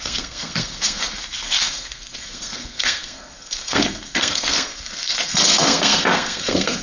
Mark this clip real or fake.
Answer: fake